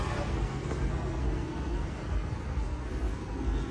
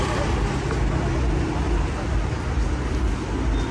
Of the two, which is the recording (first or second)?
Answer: second